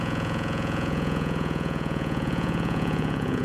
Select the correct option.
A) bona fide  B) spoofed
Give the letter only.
B